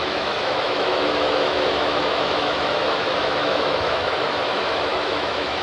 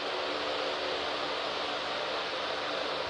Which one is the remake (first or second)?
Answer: first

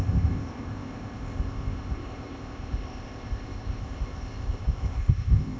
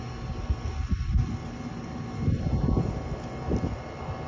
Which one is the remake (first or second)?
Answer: first